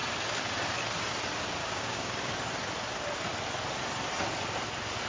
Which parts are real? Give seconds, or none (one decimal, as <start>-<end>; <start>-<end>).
0.0-1.6; 2.3-5.1